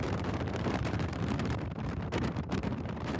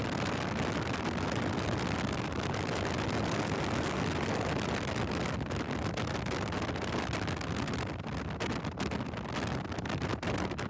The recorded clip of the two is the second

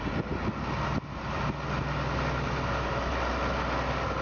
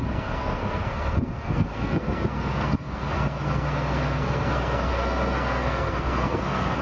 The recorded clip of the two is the first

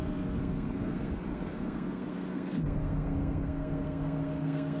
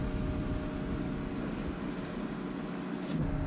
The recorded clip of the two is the second